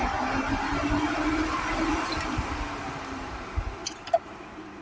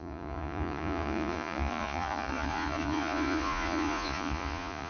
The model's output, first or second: second